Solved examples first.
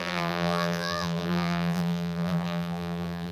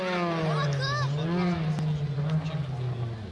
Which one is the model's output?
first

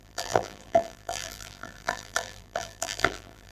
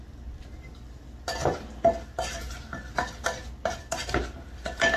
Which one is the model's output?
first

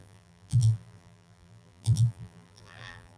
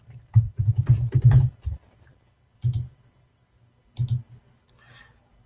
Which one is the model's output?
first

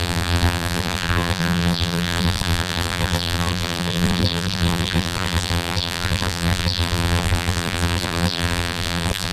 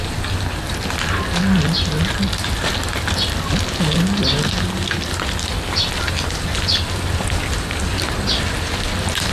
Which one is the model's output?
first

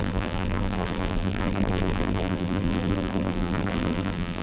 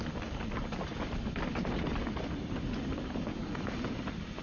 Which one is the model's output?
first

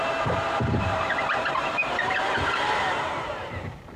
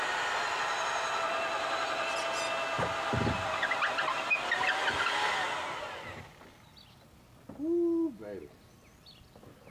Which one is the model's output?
first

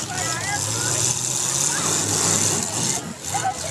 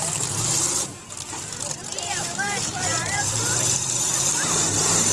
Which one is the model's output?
second